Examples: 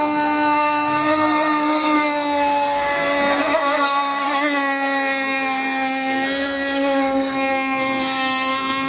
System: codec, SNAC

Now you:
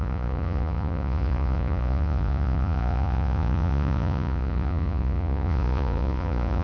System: vocoder, Vocos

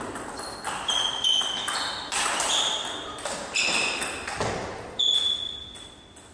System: none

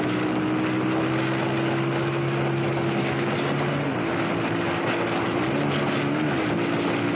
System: none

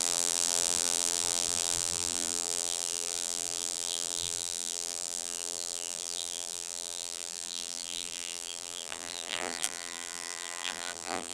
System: vocoder, BigVGAN v2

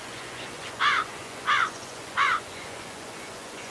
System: vocoder, Vocos